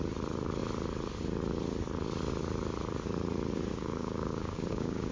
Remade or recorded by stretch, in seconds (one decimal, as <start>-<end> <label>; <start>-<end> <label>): 0.0-3.7 recorded; 3.7-5.1 remade